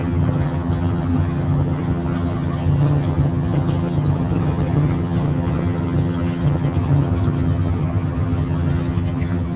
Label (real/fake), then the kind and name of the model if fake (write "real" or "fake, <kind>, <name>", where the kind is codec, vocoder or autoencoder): fake, vocoder, HiFi-GAN